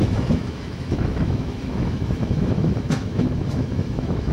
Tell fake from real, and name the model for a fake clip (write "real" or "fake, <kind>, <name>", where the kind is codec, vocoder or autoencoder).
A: fake, autoencoder, DAC-VAE